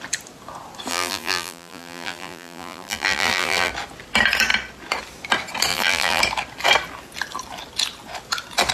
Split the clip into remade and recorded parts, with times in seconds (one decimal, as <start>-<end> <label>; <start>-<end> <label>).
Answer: 0.0-0.9 recorded; 0.9-3.7 remade; 3.7-5.7 recorded; 5.7-6.2 remade; 6.2-8.7 recorded